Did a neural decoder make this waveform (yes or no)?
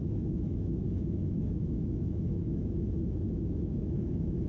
yes